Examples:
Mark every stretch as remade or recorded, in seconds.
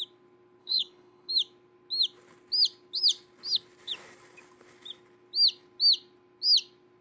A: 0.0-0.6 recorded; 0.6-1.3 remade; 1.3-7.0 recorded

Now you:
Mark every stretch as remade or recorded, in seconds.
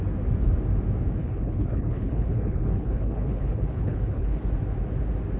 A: 0.0-1.2 recorded; 1.2-4.4 remade; 4.4-5.4 recorded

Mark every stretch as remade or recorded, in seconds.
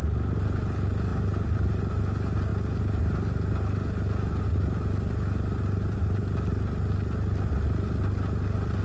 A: 0.0-8.8 recorded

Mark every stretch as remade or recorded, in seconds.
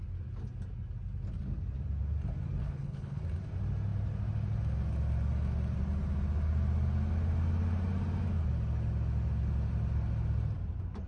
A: 0.0-2.6 recorded; 2.6-3.2 remade; 3.2-11.1 recorded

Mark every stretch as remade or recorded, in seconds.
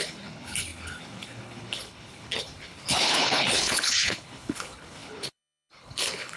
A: 0.0-6.4 remade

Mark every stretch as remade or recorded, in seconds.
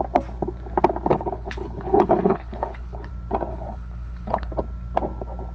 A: 0.0-1.1 recorded; 1.1-3.1 remade; 3.1-3.5 recorded; 3.5-4.5 remade; 4.5-5.5 recorded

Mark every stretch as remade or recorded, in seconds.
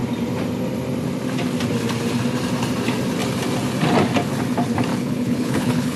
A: 0.0-4.9 recorded; 4.9-6.0 remade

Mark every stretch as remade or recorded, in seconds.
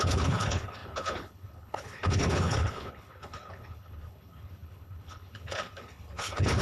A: 0.0-6.6 remade